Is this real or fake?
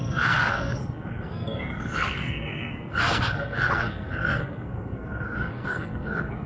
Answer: fake